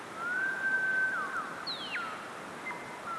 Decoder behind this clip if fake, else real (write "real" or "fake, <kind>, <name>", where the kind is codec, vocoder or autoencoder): real